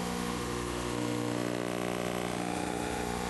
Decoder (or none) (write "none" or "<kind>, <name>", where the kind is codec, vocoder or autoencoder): autoencoder, DAC-VAE